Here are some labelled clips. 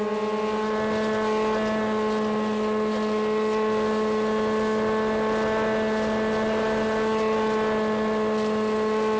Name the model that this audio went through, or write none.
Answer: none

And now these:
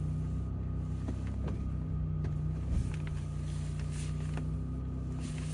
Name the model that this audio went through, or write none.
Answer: none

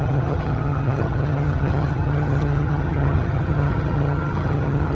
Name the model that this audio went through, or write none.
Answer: vocoder, HiFi-GAN